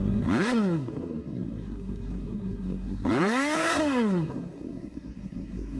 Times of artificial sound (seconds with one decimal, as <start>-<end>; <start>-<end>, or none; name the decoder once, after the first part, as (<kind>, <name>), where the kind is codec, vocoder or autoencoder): 0.0-5.8 (codec, SNAC)